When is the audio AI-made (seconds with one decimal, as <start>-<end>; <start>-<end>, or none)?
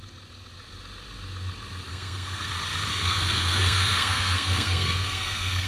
1.9-2.5; 2.9-5.7